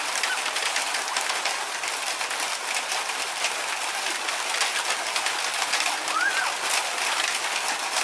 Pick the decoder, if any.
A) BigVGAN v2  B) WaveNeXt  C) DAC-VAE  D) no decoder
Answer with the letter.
D